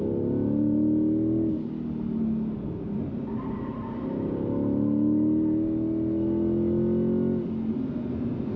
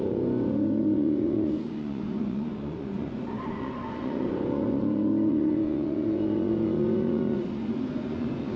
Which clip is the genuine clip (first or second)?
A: first